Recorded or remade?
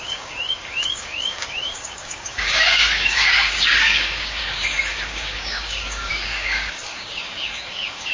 remade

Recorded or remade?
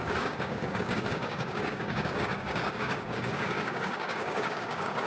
remade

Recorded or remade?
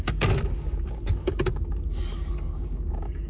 remade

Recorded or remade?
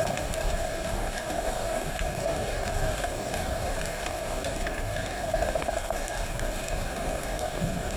remade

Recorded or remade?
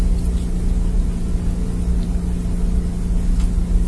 recorded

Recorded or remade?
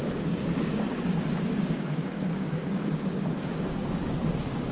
remade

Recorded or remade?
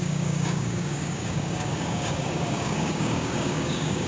remade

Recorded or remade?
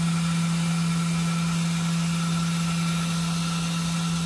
recorded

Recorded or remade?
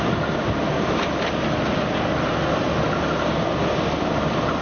recorded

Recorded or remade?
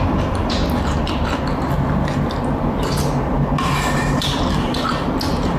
recorded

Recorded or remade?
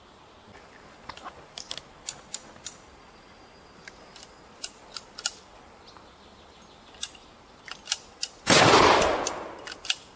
recorded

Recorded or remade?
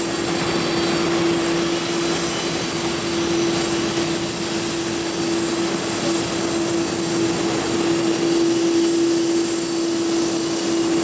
recorded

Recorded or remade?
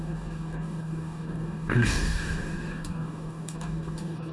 remade